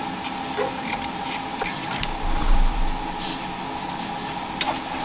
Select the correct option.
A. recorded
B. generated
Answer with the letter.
A